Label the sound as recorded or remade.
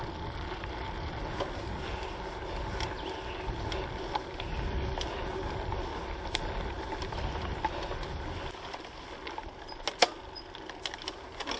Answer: recorded